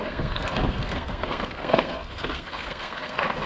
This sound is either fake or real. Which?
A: fake